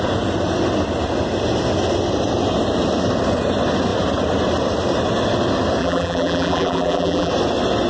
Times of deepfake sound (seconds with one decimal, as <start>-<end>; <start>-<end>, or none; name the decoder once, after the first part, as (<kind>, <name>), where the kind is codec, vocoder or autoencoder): 5.8-7.3 (vocoder, BigVGAN v2)